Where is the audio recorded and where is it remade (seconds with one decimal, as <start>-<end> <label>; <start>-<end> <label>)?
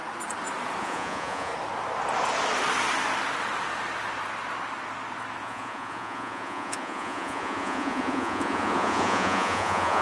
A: 0.0-0.8 recorded; 0.8-1.5 remade; 1.5-5.4 recorded; 5.4-10.0 remade